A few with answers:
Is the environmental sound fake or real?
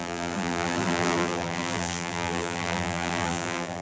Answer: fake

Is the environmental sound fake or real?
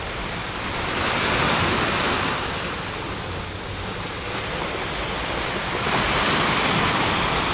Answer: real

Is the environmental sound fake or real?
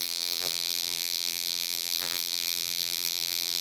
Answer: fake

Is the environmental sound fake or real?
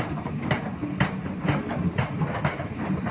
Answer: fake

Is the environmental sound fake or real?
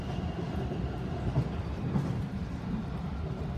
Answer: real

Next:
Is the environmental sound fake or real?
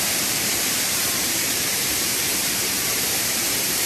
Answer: fake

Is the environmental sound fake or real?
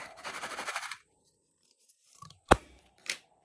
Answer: fake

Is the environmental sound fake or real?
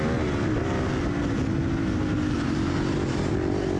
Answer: real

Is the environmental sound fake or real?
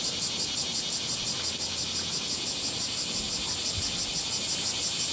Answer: real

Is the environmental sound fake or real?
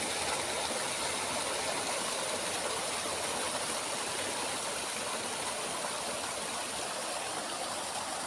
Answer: real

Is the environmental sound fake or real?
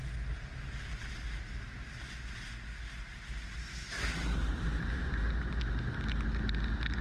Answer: real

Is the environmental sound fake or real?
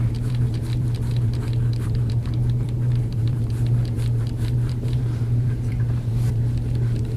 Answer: fake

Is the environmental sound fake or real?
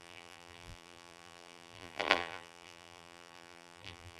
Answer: fake